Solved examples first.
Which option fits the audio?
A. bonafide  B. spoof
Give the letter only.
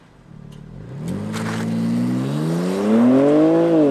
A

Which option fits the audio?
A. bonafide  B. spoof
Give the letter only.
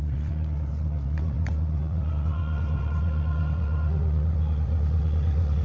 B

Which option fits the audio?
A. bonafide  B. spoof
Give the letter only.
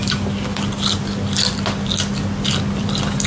A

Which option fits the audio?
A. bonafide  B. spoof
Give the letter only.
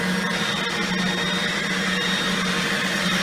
A